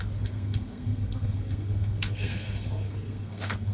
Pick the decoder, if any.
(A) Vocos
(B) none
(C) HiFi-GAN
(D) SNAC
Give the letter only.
D